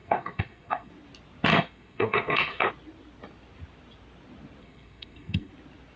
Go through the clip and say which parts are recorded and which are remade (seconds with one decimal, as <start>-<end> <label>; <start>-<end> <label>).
0.0-0.9 remade; 0.9-1.5 recorded; 1.5-2.7 remade; 2.7-4.6 recorded; 4.6-5.5 remade; 5.5-6.0 recorded